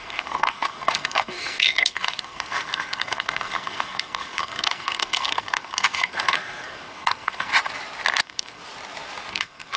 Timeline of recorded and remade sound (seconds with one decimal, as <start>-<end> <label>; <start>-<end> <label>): 0.0-7.5 remade; 7.5-8.2 recorded; 8.2-8.6 remade; 8.6-9.3 recorded; 9.3-9.8 remade

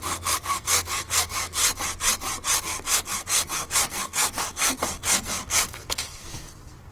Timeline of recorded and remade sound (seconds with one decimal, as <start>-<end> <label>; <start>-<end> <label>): 0.0-1.6 remade; 1.6-2.6 recorded; 2.6-6.9 remade

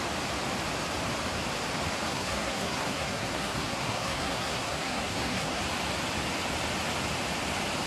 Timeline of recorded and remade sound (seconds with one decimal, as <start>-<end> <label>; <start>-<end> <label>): 0.0-2.1 recorded; 2.1-5.6 remade; 5.6-7.9 recorded

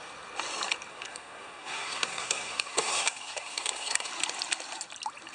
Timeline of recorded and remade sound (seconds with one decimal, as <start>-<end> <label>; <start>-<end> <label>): 0.0-0.9 recorded; 0.9-4.1 remade; 4.1-5.3 recorded

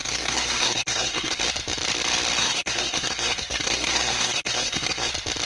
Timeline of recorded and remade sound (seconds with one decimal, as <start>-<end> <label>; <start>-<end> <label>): 0.0-1.4 remade; 1.4-2.4 recorded; 2.4-5.1 remade; 5.1-5.5 recorded

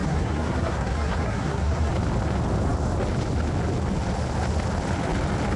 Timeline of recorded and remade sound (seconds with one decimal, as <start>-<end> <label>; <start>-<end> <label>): 0.0-1.9 remade; 1.9-5.6 recorded

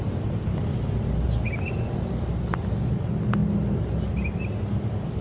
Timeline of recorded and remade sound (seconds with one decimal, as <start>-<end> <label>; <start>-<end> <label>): 0.0-5.2 recorded

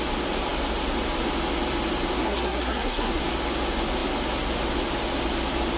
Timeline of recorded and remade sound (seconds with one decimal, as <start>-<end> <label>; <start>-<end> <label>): 0.0-2.2 recorded; 2.2-3.2 remade; 3.2-5.8 recorded